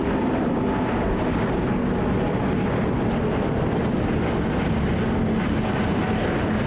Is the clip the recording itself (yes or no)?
yes